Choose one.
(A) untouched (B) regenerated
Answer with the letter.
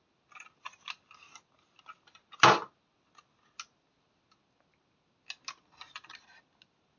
A